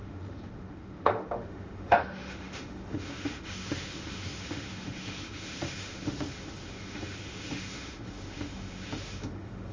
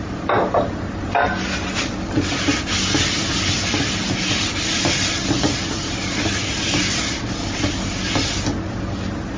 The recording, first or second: second